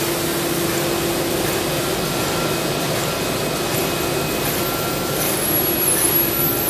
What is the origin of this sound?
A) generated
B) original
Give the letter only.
B